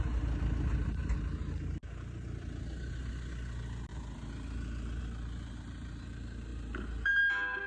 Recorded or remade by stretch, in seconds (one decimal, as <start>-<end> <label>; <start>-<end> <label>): 0.0-7.7 recorded